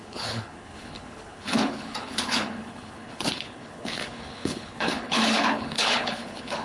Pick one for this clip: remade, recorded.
remade